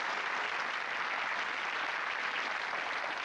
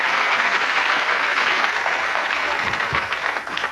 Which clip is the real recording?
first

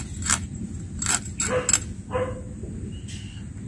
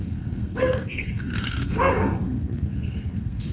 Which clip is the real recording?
first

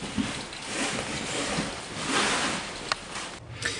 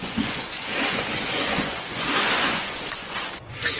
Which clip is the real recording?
first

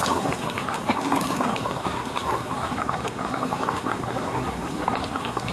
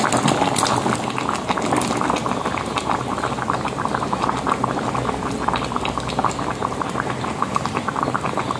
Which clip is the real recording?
second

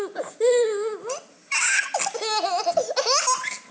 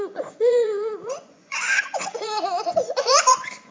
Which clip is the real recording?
first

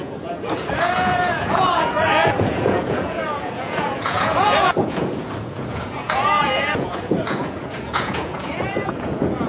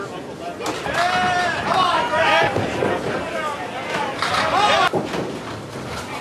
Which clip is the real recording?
second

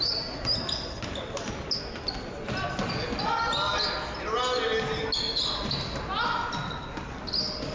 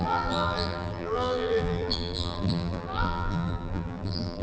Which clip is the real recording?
first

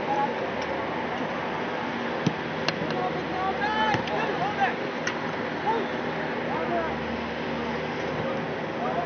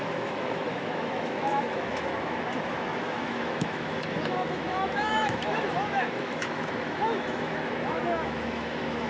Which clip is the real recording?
first